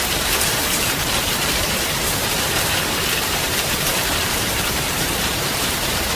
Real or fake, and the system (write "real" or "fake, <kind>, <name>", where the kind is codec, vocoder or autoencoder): fake, vocoder, BigVGAN v2